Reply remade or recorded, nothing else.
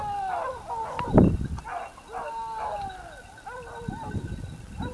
recorded